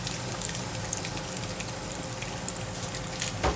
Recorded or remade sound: recorded